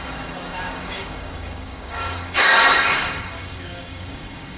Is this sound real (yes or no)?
no